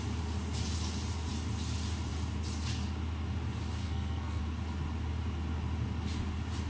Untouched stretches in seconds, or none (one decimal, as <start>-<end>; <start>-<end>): 0.0-3.8; 4.4-6.7